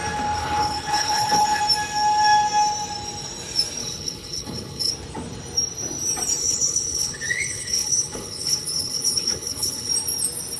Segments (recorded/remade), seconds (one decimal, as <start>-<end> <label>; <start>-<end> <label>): 0.0-0.4 recorded; 0.4-1.6 remade; 1.6-3.8 recorded; 3.8-4.9 remade; 4.9-6.4 recorded; 6.4-9.9 remade; 9.9-10.6 recorded